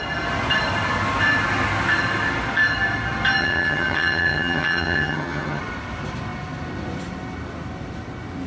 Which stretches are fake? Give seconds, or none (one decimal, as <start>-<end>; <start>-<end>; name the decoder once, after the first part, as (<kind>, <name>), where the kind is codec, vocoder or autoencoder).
3.4-5.6 (vocoder, HiFi-GAN)